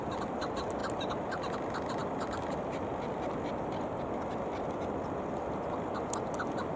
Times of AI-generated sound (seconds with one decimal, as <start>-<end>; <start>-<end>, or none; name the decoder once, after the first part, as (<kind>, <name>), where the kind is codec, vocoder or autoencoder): none